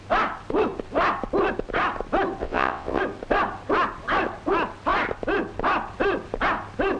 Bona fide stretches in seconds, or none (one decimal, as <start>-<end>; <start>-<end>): 0.0-2.4; 3.0-7.0

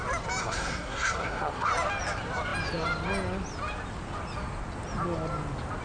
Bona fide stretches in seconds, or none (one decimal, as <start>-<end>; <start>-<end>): 0.0-0.4; 1.7-5.8

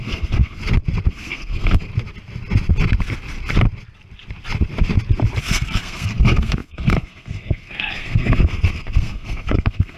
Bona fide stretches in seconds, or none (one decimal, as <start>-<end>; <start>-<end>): 0.6-1.1; 1.9-5.4